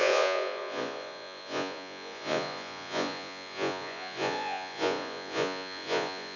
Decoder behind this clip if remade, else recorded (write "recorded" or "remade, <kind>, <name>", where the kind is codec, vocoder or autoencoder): remade, vocoder, Vocos